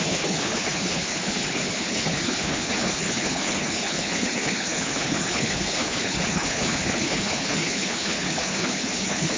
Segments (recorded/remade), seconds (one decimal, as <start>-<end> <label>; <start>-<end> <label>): 0.0-9.4 remade